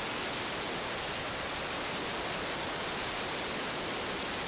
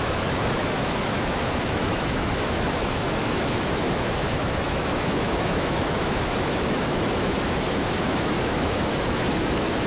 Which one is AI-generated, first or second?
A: second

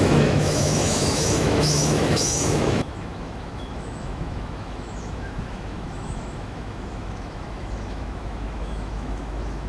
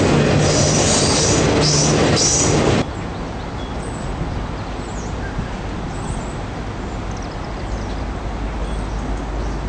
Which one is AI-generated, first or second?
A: first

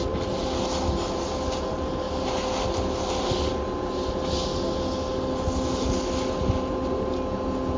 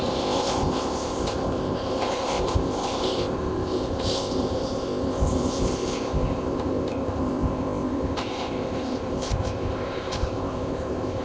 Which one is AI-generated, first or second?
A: second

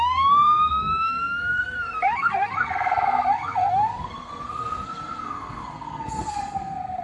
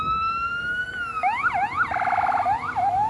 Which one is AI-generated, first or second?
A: first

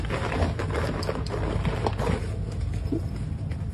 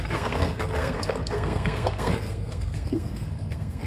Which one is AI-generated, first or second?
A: second